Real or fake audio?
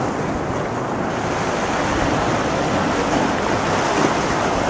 real